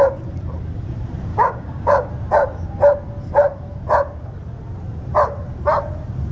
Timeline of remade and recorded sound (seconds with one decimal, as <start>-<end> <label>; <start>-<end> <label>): 0.0-1.3 recorded; 1.3-2.1 remade; 2.1-6.3 recorded